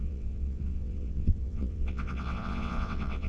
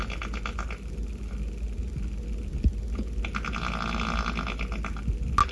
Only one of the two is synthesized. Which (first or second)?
first